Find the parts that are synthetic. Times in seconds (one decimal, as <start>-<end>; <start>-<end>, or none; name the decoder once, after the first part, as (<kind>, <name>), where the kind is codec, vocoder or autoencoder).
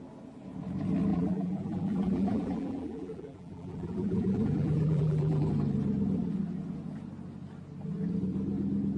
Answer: 1.1-5.5 (vocoder, BigVGAN v2)